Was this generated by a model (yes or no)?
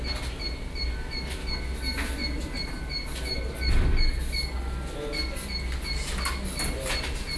no